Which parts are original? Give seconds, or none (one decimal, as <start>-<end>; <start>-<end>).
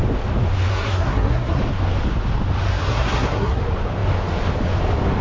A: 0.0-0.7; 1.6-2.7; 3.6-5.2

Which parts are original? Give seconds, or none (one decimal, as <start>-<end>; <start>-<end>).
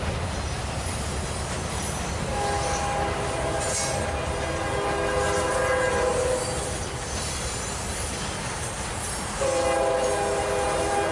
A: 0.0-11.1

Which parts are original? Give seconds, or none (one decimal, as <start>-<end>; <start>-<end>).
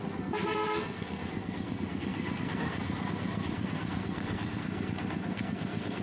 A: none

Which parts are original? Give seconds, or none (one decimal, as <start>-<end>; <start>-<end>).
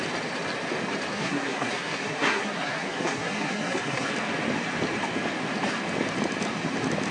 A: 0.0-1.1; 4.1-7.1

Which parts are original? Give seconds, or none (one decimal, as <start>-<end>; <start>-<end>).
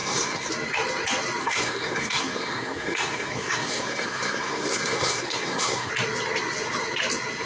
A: 0.5-1.4; 5.9-7.5